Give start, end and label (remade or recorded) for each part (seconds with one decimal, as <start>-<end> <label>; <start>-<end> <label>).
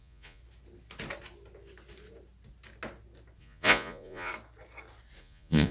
0.0-0.4 remade; 0.4-3.4 recorded; 3.4-4.3 remade; 4.3-5.2 recorded; 5.2-5.7 remade